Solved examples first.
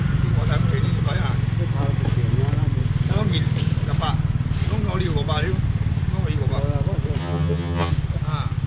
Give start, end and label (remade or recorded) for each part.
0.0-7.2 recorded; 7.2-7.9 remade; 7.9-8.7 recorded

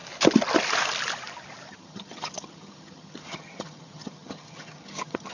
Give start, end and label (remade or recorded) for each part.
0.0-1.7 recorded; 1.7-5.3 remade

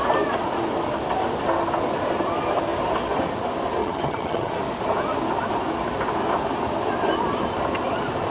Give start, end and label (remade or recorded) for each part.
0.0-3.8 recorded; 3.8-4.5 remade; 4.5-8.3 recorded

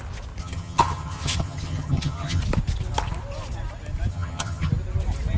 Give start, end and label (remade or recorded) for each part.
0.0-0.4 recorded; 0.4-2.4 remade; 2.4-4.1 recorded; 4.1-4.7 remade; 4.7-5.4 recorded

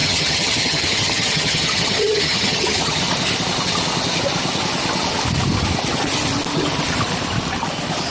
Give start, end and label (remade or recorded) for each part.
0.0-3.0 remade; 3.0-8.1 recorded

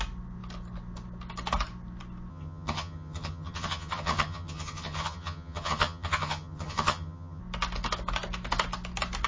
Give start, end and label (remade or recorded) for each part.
0.0-2.3 recorded; 2.3-7.4 remade; 7.4-9.3 recorded